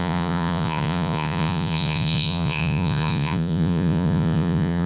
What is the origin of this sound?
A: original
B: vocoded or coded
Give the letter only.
B